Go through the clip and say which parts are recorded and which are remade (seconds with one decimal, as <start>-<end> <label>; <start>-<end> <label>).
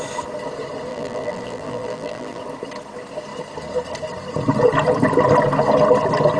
0.0-0.9 recorded; 0.9-2.4 remade; 2.4-6.4 recorded